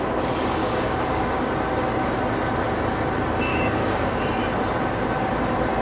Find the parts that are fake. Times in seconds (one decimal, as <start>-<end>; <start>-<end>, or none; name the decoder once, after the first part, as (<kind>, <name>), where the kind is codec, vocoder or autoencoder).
0.6-1.5 (codec, DAC); 3.5-4.2